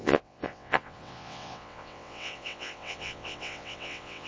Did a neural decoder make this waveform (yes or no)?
yes